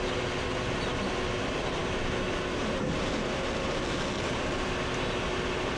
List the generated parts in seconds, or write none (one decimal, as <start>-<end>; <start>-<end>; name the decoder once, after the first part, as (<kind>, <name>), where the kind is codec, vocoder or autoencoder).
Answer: none